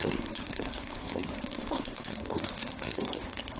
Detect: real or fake fake